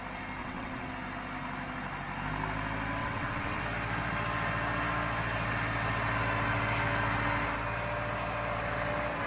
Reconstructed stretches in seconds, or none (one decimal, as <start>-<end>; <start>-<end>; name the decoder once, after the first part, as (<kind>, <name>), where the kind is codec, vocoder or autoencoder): 0.4-0.9 (vocoder, WaveNeXt); 3.0-3.6